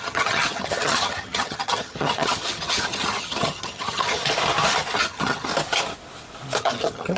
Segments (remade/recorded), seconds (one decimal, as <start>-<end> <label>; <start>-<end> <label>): 0.0-4.2 remade; 4.2-5.0 recorded; 5.0-5.5 remade; 5.5-6.6 recorded; 6.6-7.2 remade